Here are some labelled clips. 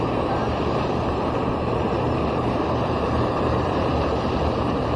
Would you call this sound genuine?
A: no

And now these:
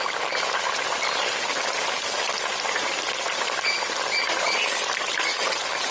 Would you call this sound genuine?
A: yes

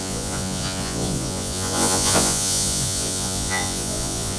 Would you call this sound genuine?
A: no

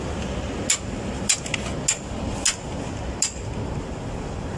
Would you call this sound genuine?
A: yes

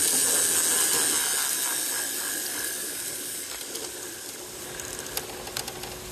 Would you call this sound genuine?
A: yes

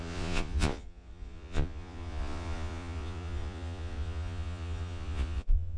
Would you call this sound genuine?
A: no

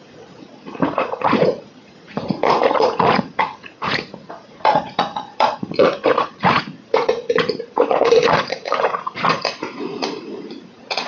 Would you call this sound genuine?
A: no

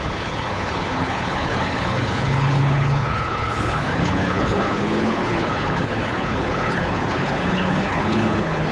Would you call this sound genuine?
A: no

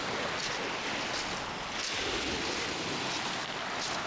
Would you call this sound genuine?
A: yes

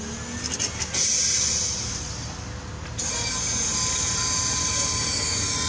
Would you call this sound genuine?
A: yes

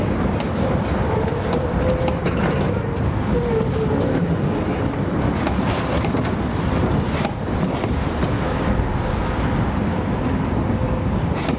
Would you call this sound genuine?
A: yes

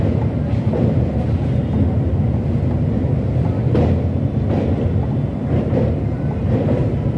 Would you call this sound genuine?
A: yes